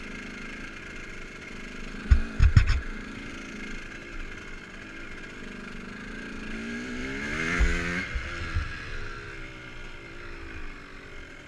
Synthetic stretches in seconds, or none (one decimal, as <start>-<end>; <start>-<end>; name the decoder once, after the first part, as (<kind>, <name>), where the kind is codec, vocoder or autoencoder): 2.4-3.3 (vocoder, Vocos)

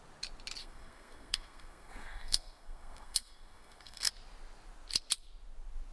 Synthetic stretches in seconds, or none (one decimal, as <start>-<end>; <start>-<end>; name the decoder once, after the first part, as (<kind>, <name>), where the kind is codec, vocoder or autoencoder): 0.6-4.1 (codec, SNAC)

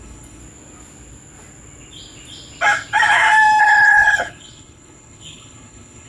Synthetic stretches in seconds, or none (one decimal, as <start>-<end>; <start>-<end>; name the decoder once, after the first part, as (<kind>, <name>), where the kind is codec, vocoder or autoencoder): 0.0-0.4 (codec, HILCodec); 3.6-6.1

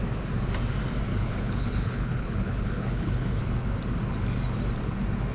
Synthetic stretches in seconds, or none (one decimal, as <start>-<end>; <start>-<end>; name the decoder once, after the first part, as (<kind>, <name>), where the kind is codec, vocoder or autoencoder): 1.1-3.4 (codec, HILCodec)